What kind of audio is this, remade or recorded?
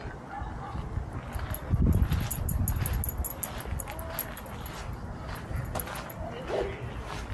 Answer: recorded